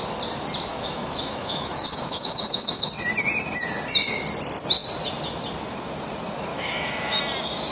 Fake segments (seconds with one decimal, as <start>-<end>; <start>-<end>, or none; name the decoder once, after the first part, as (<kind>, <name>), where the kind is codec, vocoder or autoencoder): 0.7-2.9 (autoencoder, DAC-VAE); 6.5-7.2